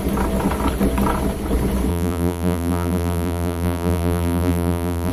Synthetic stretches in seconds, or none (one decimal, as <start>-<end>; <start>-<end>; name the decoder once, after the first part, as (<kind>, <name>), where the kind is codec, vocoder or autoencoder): 1.9-5.1 (vocoder, BigVGAN v2)